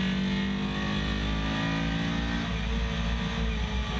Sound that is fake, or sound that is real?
real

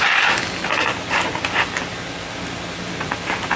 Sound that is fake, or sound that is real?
real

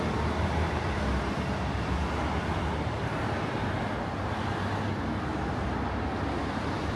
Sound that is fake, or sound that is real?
real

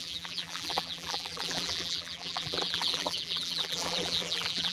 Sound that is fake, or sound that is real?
fake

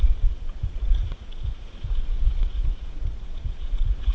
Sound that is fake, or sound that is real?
fake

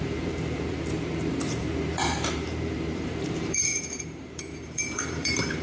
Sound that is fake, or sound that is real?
fake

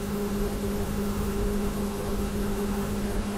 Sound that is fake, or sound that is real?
fake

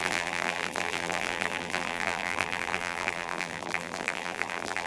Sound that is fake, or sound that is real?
fake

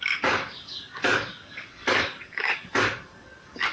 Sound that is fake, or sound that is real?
fake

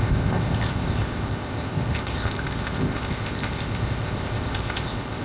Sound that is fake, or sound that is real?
fake